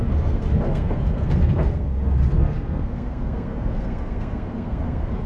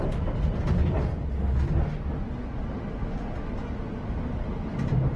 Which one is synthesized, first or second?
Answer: first